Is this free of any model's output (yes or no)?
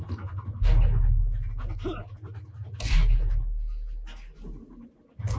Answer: yes